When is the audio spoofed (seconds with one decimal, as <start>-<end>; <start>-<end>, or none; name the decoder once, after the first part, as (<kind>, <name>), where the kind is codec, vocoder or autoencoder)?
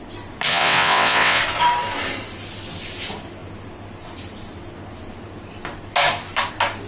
0.5-1.4 (vocoder, WaveNeXt)